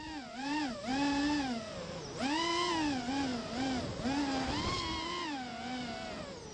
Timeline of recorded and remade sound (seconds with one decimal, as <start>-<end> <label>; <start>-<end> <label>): 0.0-6.5 recorded